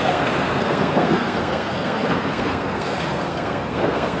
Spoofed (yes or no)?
yes